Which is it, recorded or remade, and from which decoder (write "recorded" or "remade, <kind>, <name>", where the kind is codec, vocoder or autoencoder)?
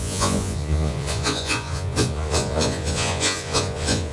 remade, vocoder, Vocos